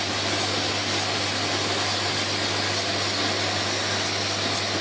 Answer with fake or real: real